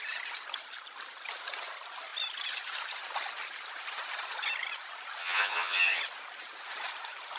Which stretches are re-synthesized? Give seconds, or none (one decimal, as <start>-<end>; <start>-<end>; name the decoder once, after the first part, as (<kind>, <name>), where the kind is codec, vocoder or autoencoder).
5.2-6.0 (vocoder, HiFi-GAN)